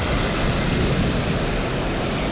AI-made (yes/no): no